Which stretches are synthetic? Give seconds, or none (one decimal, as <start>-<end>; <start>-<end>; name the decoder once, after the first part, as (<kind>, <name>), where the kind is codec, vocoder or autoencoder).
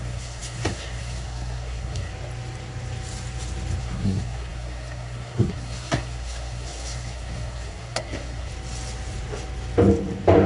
0.0-2.1 (codec, SNAC); 3.8-8.5